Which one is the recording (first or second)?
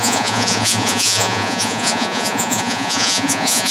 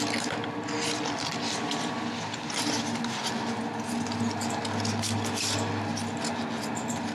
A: second